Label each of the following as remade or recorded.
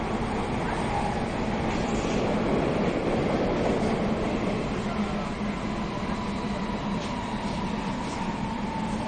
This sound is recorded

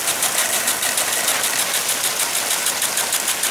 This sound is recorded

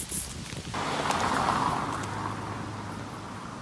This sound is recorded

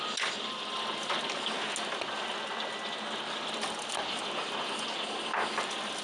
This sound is recorded